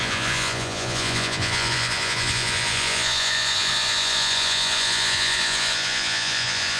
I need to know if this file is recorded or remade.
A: remade